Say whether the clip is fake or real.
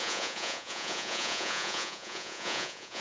fake